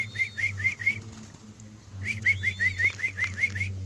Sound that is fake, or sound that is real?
real